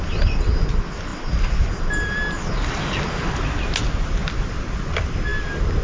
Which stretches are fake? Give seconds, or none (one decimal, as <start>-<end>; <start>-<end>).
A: none